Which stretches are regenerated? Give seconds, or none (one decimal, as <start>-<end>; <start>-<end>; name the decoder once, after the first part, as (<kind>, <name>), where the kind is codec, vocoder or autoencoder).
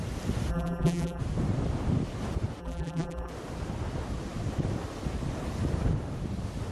0.5-1.2 (vocoder, BigVGAN v2); 2.6-3.3